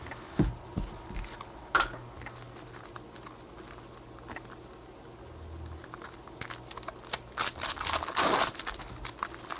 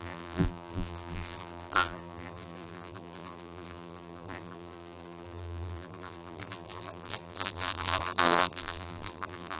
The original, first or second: first